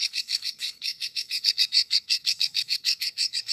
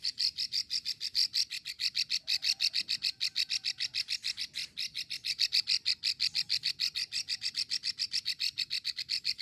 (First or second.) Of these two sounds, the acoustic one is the second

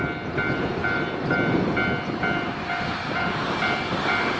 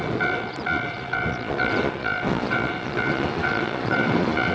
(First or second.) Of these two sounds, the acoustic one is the first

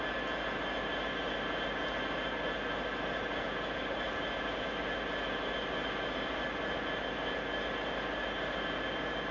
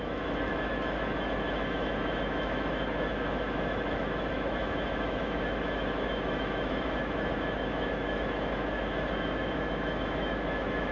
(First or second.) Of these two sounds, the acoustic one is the first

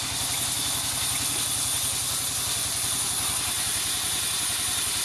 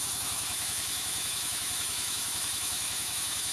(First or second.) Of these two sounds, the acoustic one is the first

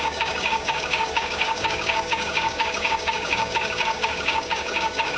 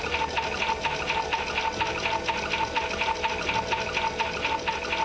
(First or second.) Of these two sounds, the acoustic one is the second